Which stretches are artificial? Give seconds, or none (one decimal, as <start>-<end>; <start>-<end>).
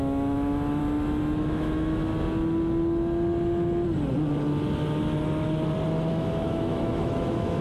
0.0-0.8; 1.4-2.1; 6.1-7.6